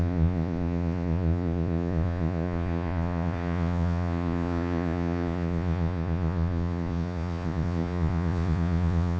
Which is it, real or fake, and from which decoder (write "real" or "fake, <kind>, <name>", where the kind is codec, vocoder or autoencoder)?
fake, vocoder, Vocos